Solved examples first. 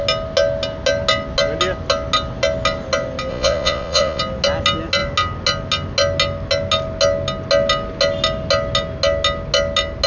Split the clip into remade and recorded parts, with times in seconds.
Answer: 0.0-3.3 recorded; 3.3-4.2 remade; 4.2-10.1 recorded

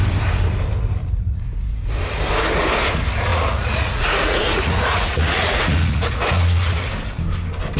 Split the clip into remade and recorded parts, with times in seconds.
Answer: 0.0-1.0 recorded; 1.0-1.6 remade; 1.6-3.3 recorded; 3.3-6.9 remade; 6.9-7.8 recorded

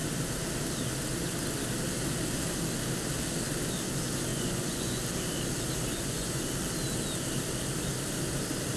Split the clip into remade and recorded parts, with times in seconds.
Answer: 0.0-4.3 recorded; 4.3-5.0 remade; 5.0-5.9 recorded; 5.9-6.4 remade; 6.4-8.8 recorded

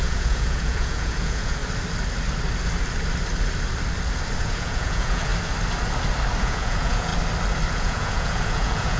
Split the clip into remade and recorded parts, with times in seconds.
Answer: 0.0-1.6 remade; 1.6-4.4 recorded; 4.4-5.3 remade; 5.3-6.4 recorded; 6.4-7.1 remade; 7.1-7.7 recorded; 7.7-9.0 remade

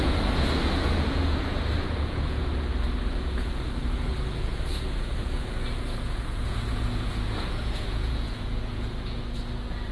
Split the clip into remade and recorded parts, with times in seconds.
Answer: 0.0-2.5 remade; 2.5-3.1 recorded; 3.1-9.9 remade